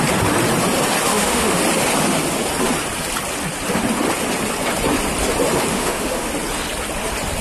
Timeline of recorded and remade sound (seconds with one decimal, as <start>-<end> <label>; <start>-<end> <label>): 0.0-1.1 recorded; 1.1-1.6 remade; 1.6-5.7 recorded; 5.7-6.3 remade; 6.3-7.4 recorded